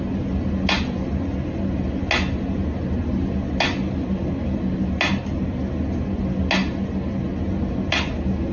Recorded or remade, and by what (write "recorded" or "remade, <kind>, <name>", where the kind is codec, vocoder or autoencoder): recorded